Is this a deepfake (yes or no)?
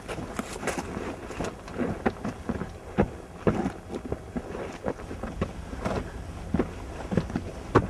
no